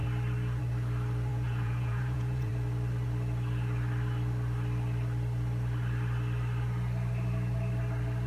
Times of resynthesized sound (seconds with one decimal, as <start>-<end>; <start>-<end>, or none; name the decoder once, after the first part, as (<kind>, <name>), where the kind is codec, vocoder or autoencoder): 1.3-2.5 (vocoder, Vocos)